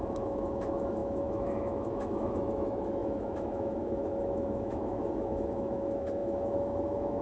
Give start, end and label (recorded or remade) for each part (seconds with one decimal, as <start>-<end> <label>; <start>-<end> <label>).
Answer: 0.0-7.2 remade